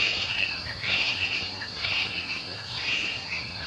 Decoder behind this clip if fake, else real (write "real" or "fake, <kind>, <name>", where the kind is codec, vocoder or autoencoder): fake, codec, SNAC